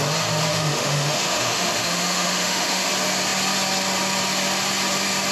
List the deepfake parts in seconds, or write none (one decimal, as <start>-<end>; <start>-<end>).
0.5-2.9